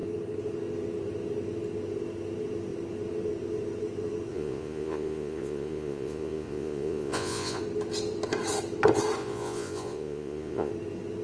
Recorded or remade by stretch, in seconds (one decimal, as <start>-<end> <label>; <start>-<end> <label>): 0.0-4.3 recorded; 4.3-7.6 remade; 7.6-9.2 recorded; 9.2-10.7 remade; 10.7-11.2 recorded